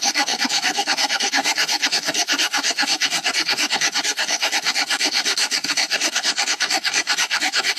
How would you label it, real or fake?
fake